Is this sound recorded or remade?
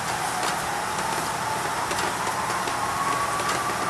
recorded